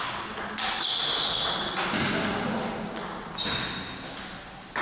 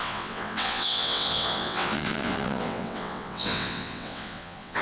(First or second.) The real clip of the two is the first